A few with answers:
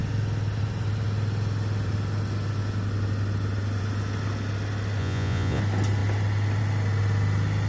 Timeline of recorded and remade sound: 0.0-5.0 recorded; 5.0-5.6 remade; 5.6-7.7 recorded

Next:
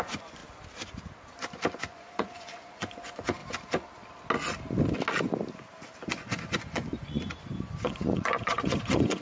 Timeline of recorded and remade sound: 0.0-0.4 remade; 0.4-1.8 recorded; 1.8-3.4 remade; 3.4-6.1 recorded; 6.1-9.2 remade

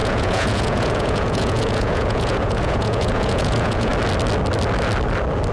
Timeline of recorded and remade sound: 0.0-3.9 remade; 3.9-5.5 recorded

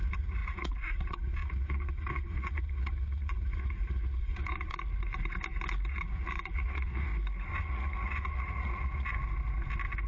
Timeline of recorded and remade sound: 0.0-4.7 remade; 4.7-5.9 recorded; 5.9-7.1 remade; 7.1-7.6 recorded; 7.6-9.2 remade; 9.2-10.1 recorded

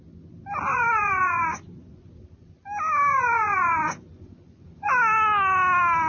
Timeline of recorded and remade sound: 0.0-0.7 recorded; 0.7-2.1 remade; 2.1-3.1 recorded; 3.1-4.9 remade; 4.9-6.1 recorded

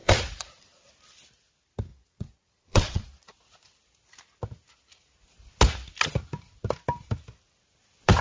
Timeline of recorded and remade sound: 0.0-0.9 remade; 0.9-1.9 recorded; 1.9-3.3 remade; 3.3-8.2 recorded

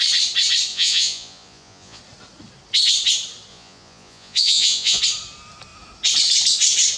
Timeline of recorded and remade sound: 0.0-0.7 recorded; 0.7-2.0 remade; 2.0-3.5 recorded; 3.5-5.0 remade; 5.0-7.0 recorded